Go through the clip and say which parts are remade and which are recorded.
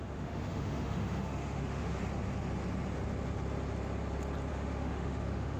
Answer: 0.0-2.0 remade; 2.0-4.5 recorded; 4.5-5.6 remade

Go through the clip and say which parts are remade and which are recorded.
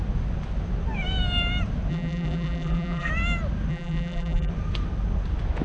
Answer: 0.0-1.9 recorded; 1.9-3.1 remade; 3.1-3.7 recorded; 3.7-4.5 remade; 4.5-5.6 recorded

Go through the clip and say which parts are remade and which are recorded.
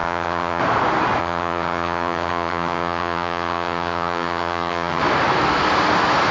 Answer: 0.0-0.6 remade; 0.6-1.2 recorded; 1.2-5.0 remade; 5.0-6.3 recorded